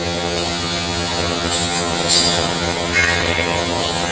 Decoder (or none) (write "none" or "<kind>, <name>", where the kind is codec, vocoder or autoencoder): vocoder, HiFi-GAN